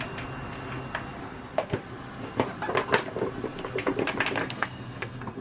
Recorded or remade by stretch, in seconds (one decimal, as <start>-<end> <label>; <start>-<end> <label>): 0.0-4.4 recorded; 4.4-5.4 remade